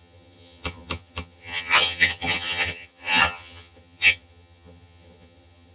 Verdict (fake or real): fake